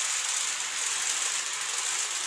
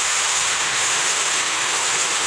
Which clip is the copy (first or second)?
second